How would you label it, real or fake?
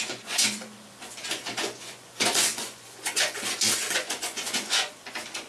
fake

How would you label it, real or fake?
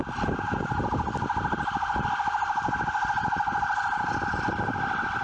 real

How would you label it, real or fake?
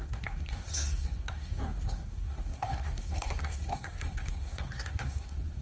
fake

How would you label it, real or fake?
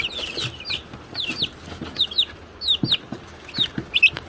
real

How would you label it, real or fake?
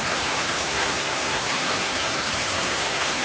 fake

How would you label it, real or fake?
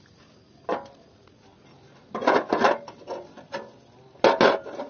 real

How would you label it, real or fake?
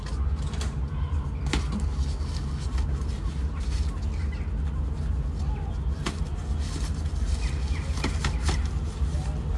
real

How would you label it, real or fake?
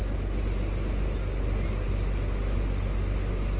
real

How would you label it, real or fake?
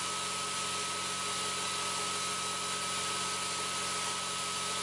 real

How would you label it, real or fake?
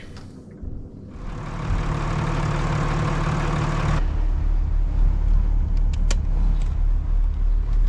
real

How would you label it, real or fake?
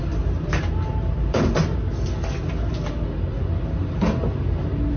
real